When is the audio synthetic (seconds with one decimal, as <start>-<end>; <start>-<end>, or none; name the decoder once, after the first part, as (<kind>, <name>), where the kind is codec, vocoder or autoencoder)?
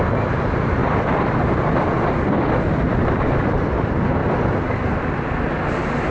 0.0-4.2 (vocoder, BigVGAN v2); 5.5-6.1